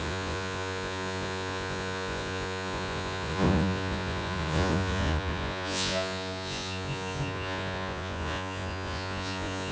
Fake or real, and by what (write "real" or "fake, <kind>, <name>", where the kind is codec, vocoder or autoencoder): fake, vocoder, Vocos